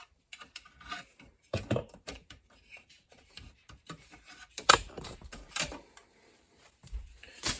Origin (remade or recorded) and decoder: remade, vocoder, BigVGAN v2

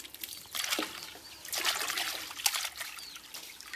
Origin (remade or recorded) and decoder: recorded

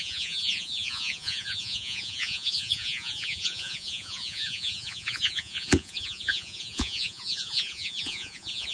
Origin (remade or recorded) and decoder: remade, vocoder, Vocos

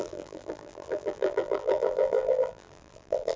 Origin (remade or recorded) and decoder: remade, vocoder, BigVGAN v2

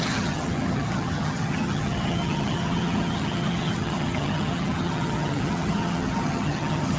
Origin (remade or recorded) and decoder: remade, vocoder, HiFi-GAN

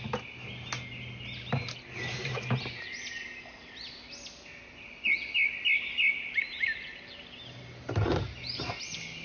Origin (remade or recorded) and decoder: recorded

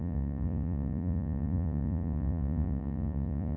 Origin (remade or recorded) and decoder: remade, vocoder, Vocos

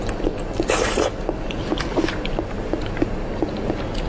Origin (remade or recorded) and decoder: recorded